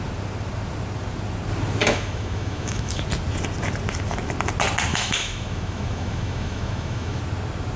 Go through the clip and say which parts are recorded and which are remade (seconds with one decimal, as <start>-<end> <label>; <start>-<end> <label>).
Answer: 0.0-1.8 recorded; 1.8-3.0 remade; 3.0-4.9 recorded; 4.9-7.2 remade; 7.2-7.8 recorded